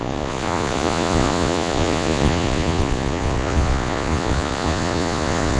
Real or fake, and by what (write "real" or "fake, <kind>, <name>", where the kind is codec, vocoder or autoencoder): fake, vocoder, Vocos